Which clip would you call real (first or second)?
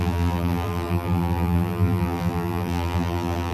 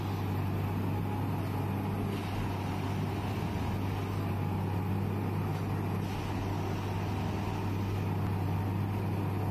second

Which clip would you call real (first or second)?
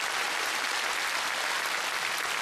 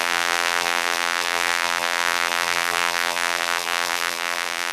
first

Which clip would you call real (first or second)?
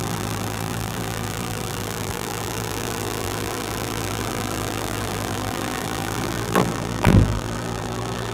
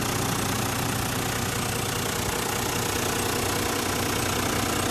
second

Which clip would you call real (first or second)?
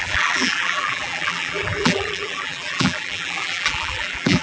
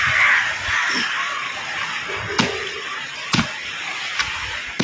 second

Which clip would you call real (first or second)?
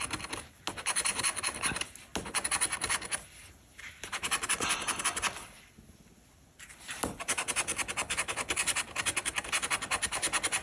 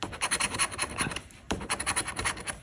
first